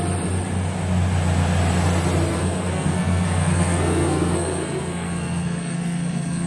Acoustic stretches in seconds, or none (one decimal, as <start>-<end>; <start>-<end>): 0.0-2.3